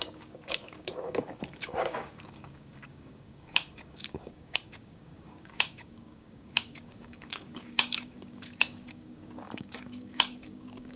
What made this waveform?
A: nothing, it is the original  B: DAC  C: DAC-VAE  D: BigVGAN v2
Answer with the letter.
B